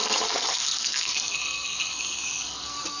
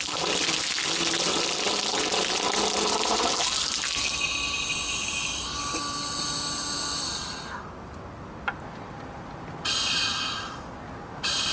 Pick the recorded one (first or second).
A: second